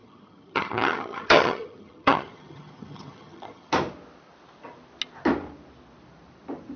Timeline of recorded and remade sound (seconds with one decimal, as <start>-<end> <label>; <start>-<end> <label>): 0.0-3.7 remade; 3.7-6.8 recorded